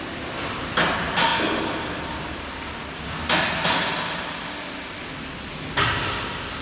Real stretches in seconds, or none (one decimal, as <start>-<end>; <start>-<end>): 0.0-6.6